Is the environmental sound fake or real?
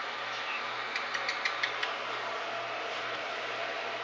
real